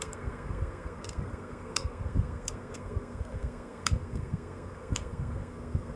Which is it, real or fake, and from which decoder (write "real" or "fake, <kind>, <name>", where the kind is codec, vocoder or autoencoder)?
fake, codec, SNAC